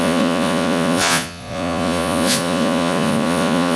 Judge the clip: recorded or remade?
remade